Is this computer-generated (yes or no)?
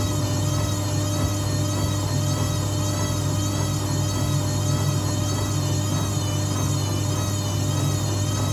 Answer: no